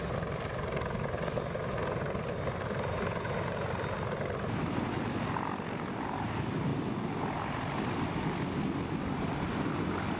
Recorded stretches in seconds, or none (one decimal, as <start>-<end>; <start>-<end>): 0.0-10.2